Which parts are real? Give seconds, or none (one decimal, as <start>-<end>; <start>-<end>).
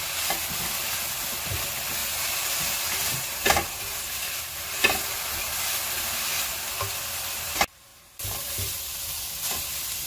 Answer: 0.0-2.0; 4.0-7.9; 8.8-10.1